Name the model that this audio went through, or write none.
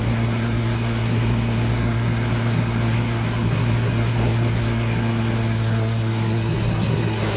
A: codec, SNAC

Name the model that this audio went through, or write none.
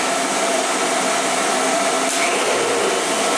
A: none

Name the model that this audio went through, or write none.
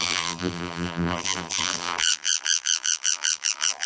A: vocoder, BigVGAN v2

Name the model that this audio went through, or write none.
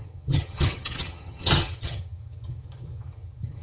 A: vocoder, HiFi-GAN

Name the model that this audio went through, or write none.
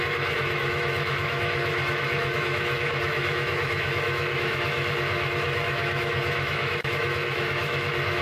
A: autoencoder, DAC-VAE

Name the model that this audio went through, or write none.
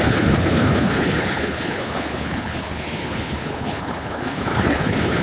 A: codec, HILCodec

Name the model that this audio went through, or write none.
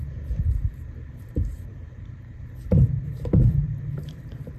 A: vocoder, BigVGAN v2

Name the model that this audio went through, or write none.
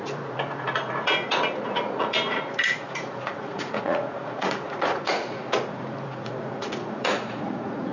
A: vocoder, Vocos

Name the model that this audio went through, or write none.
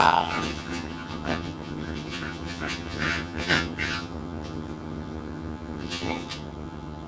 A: vocoder, HiFi-GAN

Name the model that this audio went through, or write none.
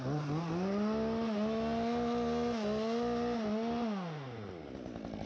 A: none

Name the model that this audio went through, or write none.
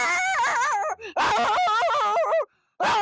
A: none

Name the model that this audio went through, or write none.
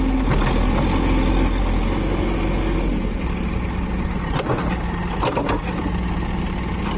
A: none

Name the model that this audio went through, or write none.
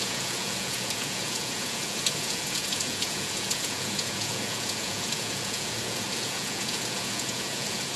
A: vocoder, Vocos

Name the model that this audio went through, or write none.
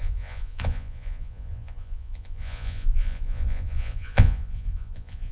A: vocoder, Vocos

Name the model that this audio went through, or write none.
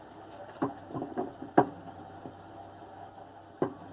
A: none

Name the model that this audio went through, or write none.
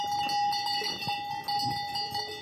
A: none